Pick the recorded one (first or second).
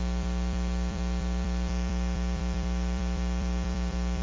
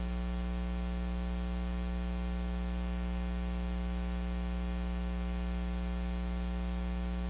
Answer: second